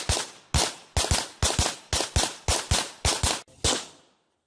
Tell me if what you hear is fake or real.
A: real